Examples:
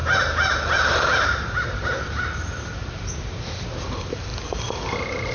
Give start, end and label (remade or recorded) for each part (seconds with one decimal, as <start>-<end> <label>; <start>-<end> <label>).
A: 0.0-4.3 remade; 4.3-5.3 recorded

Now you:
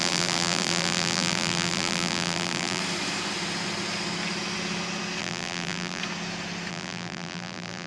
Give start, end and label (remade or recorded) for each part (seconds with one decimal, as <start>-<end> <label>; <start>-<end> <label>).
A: 0.0-2.8 remade; 2.8-5.2 recorded; 5.2-6.0 remade; 6.0-6.7 recorded; 6.7-7.9 remade

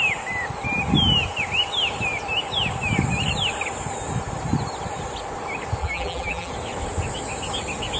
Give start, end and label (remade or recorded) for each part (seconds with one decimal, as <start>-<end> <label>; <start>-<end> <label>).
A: 0.0-5.8 recorded; 5.8-6.5 remade; 6.5-8.0 recorded

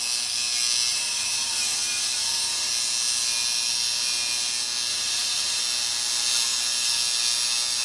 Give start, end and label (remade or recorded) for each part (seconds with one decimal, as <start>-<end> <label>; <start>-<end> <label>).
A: 0.0-0.9 recorded; 0.9-2.7 remade; 2.7-4.9 recorded; 4.9-5.6 remade; 5.6-7.8 recorded

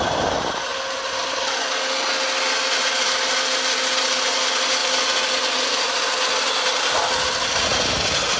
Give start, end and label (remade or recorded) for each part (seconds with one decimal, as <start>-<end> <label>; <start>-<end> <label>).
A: 0.0-8.4 recorded

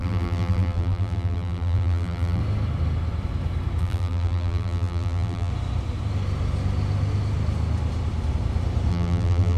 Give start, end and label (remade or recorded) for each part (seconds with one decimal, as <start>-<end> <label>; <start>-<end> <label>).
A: 0.0-2.4 remade; 2.4-3.8 recorded; 3.8-5.5 remade; 5.5-8.9 recorded; 8.9-9.6 remade

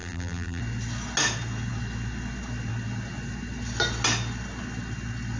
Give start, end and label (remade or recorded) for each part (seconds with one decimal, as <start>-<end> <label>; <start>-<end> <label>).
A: 0.0-0.6 remade; 0.6-5.4 recorded

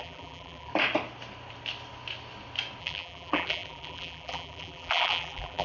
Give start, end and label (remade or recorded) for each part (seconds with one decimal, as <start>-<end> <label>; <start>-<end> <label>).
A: 0.0-0.7 remade; 0.7-2.8 recorded; 2.8-5.6 remade